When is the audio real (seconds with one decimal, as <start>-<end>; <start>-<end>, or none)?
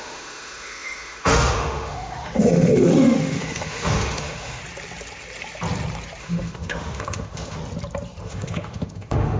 4.6-6.2; 7.6-8.2